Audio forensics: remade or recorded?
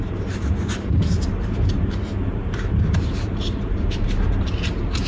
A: remade